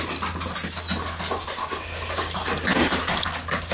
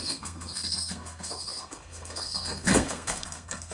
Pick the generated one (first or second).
second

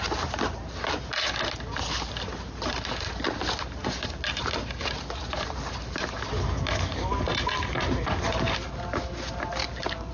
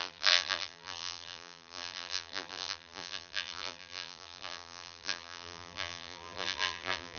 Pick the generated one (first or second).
second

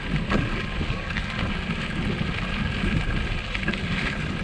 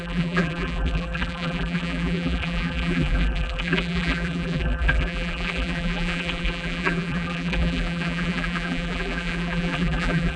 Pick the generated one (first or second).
second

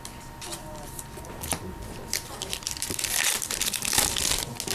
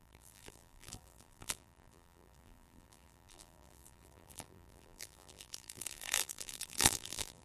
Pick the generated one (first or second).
second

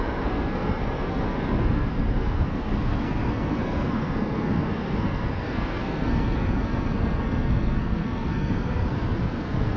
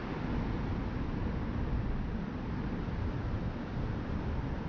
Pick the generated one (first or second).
first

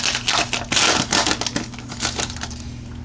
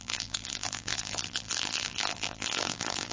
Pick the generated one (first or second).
second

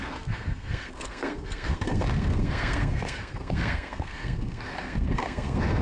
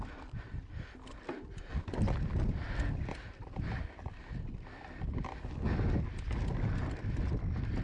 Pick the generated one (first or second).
first